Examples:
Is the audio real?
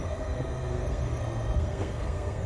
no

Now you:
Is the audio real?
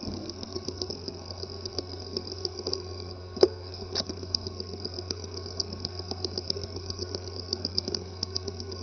no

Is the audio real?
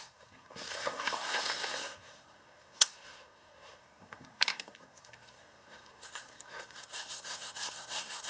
no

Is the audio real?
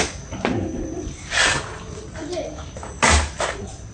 yes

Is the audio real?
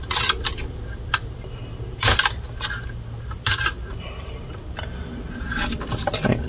yes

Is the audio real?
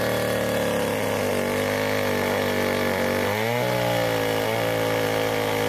yes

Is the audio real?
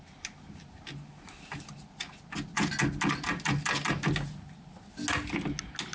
yes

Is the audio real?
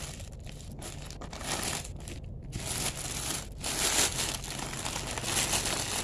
yes